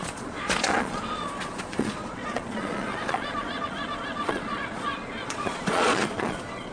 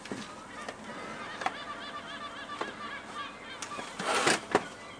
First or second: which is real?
second